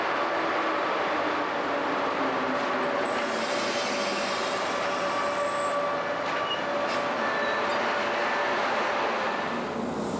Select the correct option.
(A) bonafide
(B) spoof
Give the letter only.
A